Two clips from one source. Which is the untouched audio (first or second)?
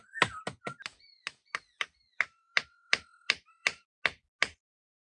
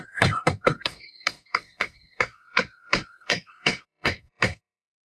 first